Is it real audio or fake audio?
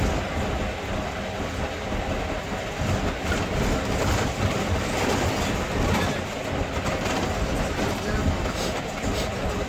real